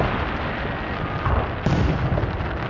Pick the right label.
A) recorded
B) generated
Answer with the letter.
A